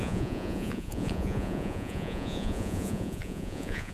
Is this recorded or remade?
remade